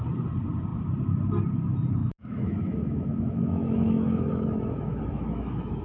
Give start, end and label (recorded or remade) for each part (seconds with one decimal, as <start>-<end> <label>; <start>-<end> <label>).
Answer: 0.0-2.0 recorded; 2.0-5.8 remade